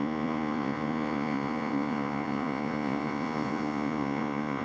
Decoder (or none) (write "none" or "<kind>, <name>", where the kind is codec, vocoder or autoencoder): vocoder, Vocos